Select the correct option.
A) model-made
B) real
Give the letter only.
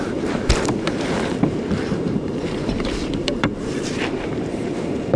A